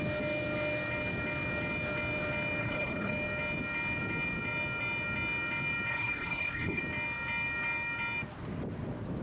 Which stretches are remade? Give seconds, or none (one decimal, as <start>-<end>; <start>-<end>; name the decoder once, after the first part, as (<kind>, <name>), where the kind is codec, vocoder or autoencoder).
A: 2.6-3.1 (codec, HILCodec); 5.9-6.8